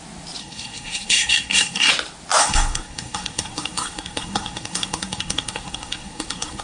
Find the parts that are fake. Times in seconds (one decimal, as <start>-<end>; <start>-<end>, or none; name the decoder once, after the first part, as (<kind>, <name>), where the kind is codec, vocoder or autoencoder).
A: 0.4-1.9 (codec, SNAC); 2.4-6.6